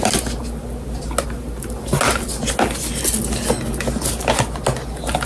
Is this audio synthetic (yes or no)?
no